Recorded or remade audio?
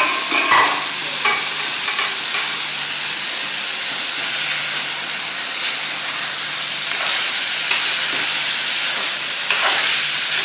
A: recorded